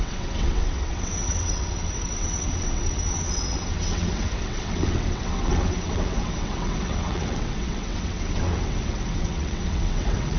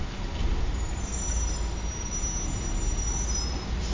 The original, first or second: second